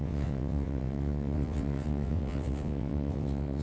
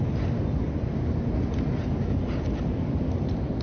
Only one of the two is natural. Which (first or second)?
second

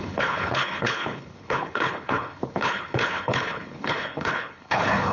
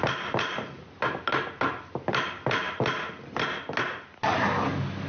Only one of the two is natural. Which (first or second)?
second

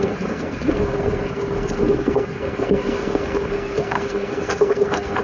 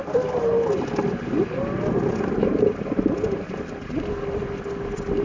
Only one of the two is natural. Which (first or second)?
second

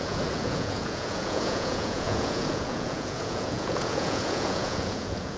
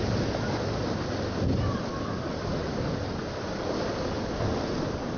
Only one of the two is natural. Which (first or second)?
second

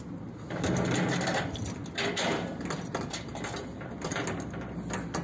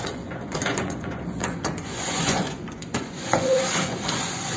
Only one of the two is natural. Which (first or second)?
first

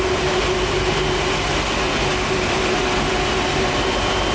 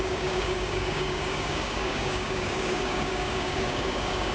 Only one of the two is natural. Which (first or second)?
first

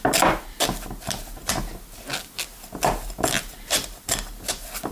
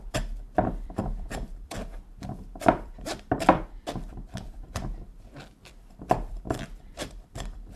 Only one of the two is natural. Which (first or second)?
first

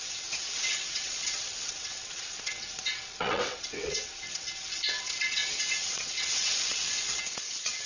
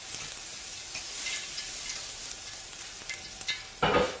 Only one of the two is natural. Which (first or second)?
second